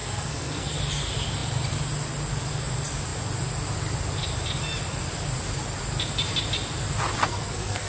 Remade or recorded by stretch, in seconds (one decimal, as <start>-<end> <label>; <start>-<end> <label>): 0.0-0.8 remade; 0.8-7.2 recorded; 7.2-7.9 remade